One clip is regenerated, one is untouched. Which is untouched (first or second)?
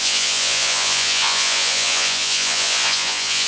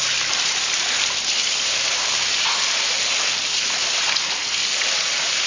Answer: second